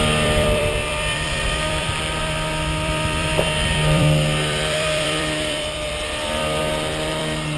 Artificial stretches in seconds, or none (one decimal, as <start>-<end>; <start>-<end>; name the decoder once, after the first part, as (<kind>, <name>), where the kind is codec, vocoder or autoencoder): 0.0-6.6 (vocoder, BigVGAN v2); 7.1-7.6